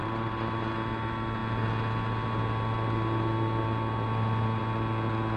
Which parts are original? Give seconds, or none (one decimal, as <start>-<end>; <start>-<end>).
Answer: 0.7-5.4